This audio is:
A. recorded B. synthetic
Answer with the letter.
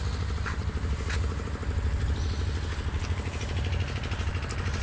A